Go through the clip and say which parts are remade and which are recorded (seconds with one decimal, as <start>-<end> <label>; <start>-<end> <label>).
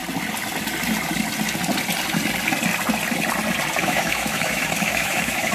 0.0-3.8 recorded; 3.8-5.5 remade